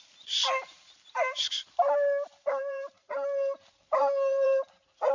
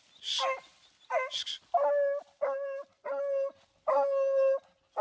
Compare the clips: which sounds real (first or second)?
second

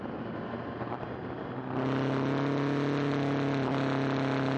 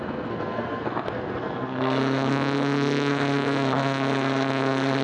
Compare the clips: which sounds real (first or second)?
first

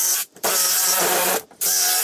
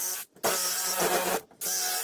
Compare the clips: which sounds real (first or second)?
second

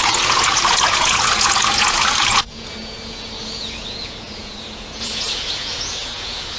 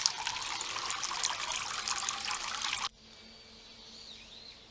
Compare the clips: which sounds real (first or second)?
second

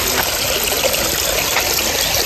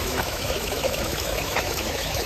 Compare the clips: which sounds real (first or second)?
first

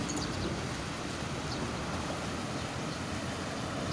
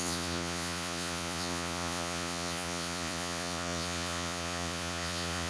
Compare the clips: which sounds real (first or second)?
first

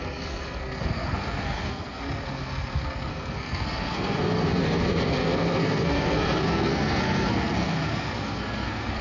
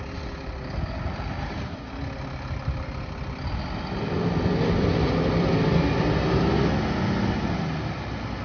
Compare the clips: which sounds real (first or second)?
second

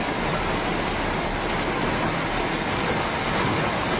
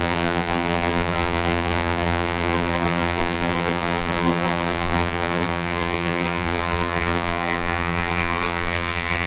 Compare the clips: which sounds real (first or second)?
first